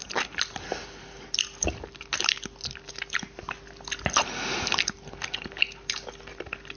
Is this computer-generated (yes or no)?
no